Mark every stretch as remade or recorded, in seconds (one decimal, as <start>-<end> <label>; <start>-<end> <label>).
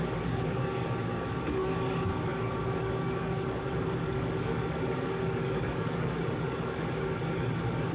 0.0-7.9 remade